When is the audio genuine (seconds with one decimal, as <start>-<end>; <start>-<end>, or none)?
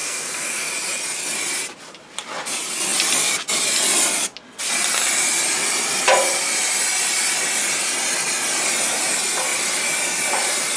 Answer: 0.7-10.8